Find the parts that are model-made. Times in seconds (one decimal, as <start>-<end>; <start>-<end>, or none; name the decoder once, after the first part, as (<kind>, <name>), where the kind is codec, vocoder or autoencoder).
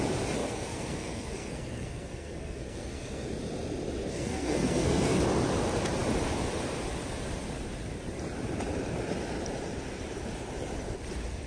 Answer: 0.4-3.3 (codec, SNAC); 4.1-5.2